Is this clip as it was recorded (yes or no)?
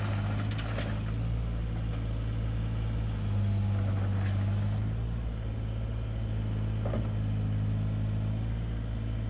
yes